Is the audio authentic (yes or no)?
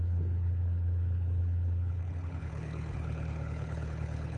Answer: no